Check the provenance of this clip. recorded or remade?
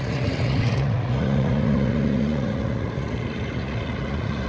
remade